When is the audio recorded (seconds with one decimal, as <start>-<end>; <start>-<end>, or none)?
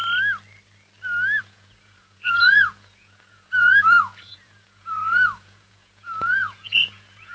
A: 0.0-1.4